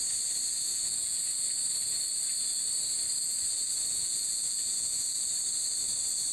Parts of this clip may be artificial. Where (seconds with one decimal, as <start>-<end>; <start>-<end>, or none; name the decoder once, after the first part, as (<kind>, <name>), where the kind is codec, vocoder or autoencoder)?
0.7-1.3 (vocoder, Vocos); 3.9-5.2